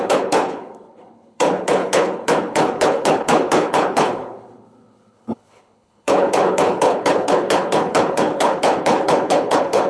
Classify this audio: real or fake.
fake